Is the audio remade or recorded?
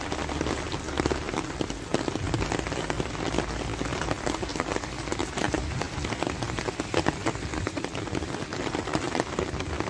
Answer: recorded